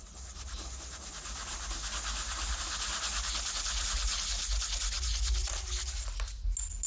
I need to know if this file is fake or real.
real